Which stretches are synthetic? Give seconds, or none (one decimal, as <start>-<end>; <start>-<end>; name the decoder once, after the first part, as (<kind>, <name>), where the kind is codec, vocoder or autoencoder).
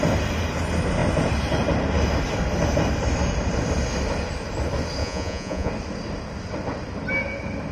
5.0-5.7 (vocoder, Vocos)